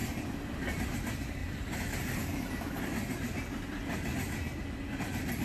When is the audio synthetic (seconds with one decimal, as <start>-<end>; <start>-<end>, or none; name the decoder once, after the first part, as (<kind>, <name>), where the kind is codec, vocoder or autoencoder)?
0.0-0.7 (vocoder, BigVGAN v2); 1.4-2.7